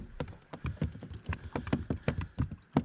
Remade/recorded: recorded